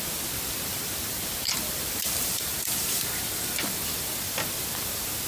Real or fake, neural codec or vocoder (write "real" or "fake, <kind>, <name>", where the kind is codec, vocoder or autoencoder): fake, vocoder, BigVGAN v2